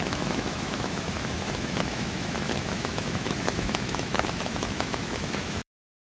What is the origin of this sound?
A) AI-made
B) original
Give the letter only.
A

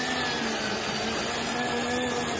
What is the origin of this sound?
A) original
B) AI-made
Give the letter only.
A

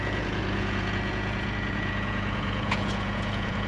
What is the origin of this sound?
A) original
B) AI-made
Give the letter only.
B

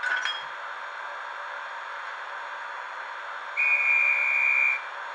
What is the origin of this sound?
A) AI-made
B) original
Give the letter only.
B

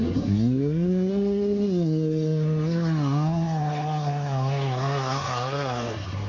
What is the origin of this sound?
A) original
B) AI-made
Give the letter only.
B